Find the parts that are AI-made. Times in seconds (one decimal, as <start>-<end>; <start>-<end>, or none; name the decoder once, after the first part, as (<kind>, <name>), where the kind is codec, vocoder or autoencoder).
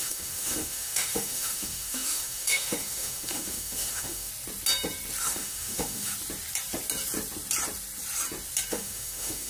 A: 0.0-4.3 (autoencoder, DAC-VAE); 5.2-6.1; 8.7-9.5